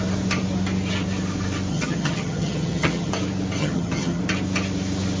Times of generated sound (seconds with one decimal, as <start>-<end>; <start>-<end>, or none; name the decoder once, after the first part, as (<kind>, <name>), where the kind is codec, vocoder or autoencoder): 1.7-3.1 (vocoder, HiFi-GAN); 3.6-4.2

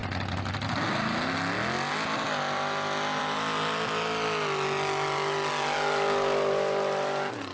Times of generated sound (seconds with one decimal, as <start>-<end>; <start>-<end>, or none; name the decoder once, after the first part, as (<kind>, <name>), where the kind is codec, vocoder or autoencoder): none

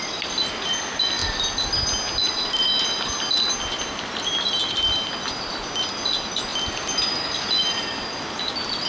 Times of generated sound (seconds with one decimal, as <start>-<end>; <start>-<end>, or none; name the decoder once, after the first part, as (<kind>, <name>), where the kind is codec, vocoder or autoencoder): none

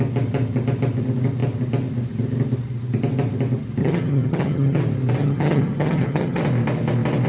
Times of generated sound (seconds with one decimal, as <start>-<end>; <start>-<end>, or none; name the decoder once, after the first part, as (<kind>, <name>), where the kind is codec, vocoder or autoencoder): 3.8-4.8 (vocoder, HiFi-GAN); 5.2-6.4

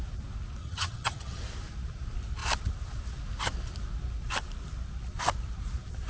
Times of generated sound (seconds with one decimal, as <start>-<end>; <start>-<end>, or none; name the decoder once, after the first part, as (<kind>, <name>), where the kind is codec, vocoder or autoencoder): 0.6-1.4 (vocoder, HiFi-GAN)